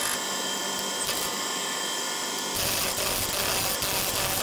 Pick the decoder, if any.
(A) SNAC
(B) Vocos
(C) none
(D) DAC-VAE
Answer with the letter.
C